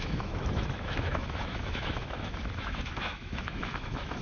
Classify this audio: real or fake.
fake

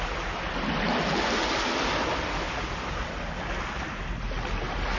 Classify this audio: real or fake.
real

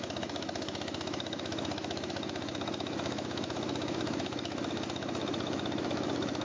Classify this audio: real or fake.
fake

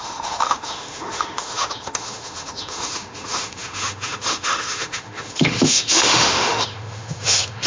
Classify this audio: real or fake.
fake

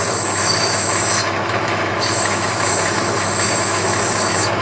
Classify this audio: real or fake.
fake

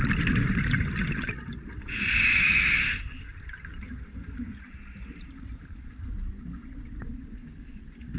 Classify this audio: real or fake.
real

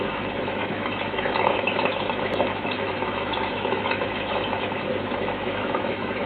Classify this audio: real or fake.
fake